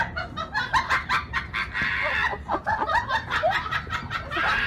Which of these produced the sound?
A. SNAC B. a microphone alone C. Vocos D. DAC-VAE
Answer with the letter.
B